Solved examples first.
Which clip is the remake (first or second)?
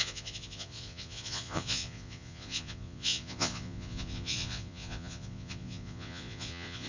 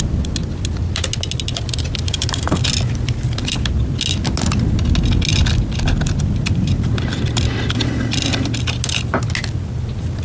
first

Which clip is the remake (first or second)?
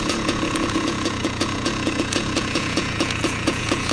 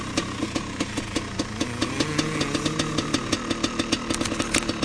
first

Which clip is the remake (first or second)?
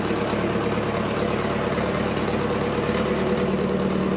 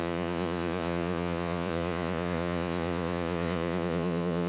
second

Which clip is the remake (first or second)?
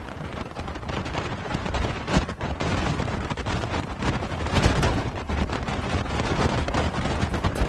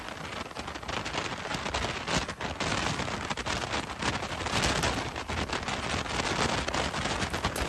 first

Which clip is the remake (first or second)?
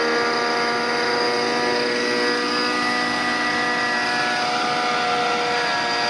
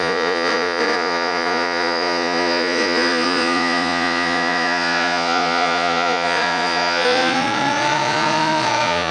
second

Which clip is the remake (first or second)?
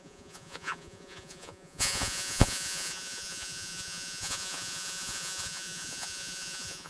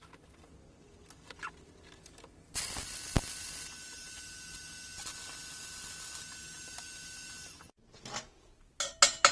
first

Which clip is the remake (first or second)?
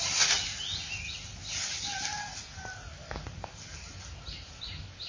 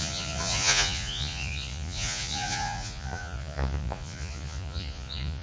second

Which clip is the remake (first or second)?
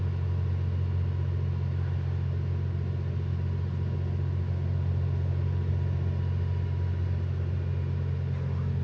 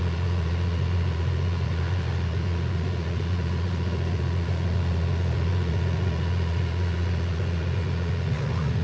second